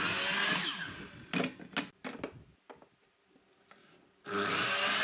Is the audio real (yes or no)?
yes